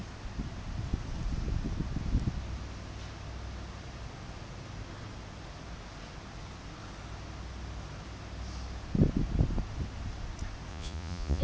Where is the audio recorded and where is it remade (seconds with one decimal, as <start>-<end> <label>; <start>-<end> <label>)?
0.0-10.7 recorded; 10.7-11.4 remade